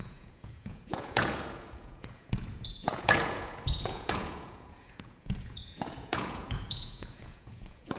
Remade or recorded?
remade